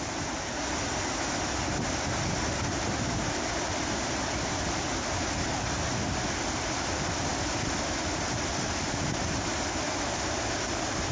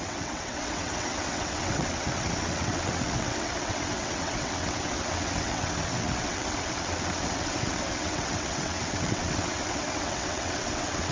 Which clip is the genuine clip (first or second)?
first